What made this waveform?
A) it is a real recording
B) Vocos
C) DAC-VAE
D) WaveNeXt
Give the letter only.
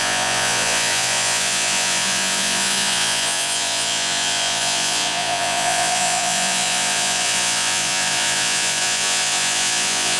B